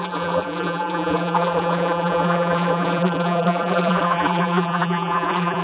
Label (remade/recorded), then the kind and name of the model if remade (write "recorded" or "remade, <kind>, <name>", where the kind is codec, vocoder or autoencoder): remade, vocoder, BigVGAN v2